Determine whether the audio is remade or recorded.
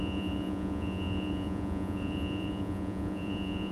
remade